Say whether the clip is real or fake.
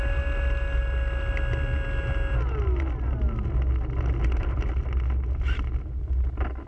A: real